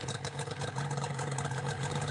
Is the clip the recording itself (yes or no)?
no